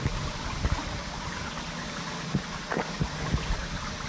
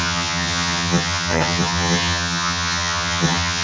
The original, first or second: first